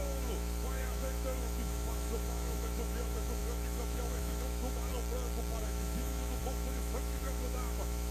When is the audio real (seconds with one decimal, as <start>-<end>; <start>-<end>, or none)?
4.9-5.6